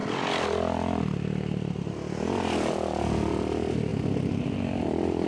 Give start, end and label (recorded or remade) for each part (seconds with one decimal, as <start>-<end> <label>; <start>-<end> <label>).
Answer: 0.0-5.3 recorded